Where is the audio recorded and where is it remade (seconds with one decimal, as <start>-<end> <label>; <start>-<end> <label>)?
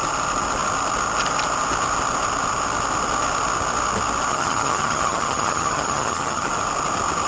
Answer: 0.0-4.3 recorded; 4.3-6.5 remade; 6.5-7.3 recorded